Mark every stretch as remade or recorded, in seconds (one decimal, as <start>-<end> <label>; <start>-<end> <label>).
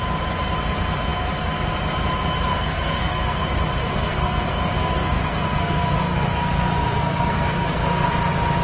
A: 0.0-2.5 recorded; 2.5-3.4 remade; 3.4-3.8 recorded; 3.8-8.1 remade; 8.1-8.6 recorded